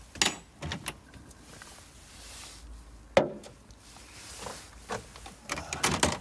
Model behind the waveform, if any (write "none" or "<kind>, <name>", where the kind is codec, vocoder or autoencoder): none